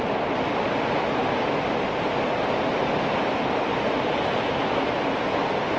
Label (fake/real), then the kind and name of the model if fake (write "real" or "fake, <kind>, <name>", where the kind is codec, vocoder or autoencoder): real